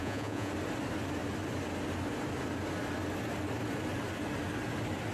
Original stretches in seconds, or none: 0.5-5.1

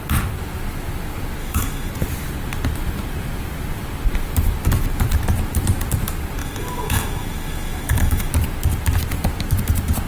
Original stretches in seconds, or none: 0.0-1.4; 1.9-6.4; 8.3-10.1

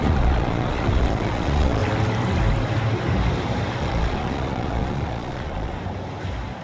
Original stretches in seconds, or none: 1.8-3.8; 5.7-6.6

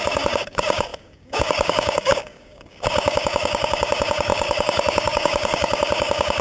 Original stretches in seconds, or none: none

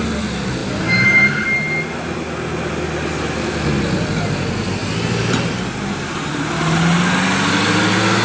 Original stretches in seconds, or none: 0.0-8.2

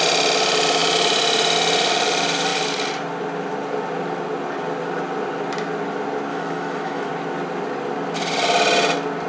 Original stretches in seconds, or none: 0.0-6.3; 7.1-9.3

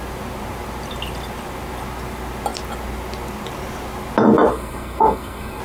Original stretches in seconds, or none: 0.0-4.5

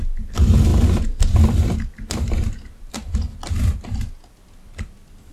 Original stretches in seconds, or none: 0.0-5.3